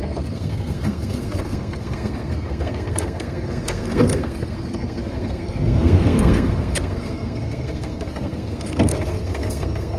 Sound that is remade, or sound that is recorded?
remade